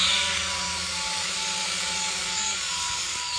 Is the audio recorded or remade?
remade